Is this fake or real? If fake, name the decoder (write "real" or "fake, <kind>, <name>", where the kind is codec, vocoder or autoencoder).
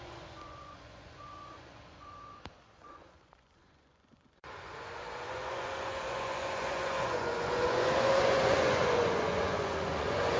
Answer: fake, vocoder, Vocos